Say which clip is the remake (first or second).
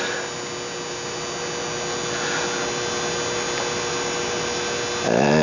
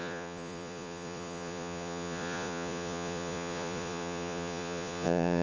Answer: second